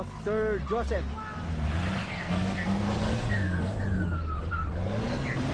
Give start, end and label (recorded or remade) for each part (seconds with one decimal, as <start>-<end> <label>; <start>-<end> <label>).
0.0-2.0 recorded; 2.0-3.8 remade; 3.8-5.5 recorded